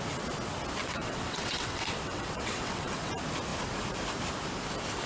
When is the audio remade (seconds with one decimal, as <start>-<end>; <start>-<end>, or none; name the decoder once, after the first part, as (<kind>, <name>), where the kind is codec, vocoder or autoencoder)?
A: 0.8-3.1 (vocoder, WaveNeXt)